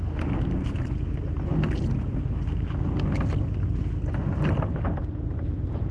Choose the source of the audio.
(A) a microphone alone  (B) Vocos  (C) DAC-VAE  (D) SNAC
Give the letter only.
A